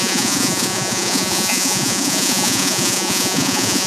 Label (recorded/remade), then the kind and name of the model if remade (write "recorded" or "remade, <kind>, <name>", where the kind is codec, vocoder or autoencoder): remade, vocoder, Vocos